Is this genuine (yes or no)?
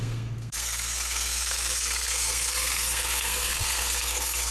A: no